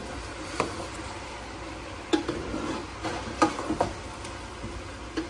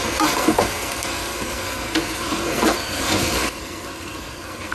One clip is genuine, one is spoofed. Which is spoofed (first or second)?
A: second